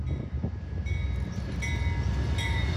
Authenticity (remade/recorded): recorded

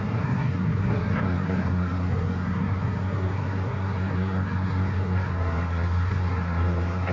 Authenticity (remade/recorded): remade